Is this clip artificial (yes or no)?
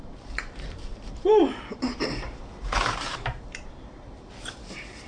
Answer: yes